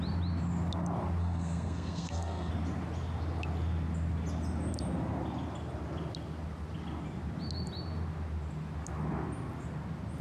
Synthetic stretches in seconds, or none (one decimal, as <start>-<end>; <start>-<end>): 1.2-2.5